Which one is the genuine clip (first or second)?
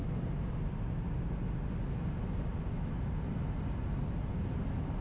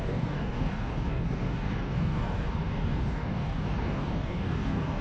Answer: first